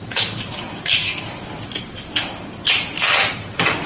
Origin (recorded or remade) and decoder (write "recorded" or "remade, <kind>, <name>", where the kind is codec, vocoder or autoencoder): remade, vocoder, BigVGAN v2